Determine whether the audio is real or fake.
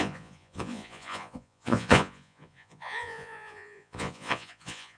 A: fake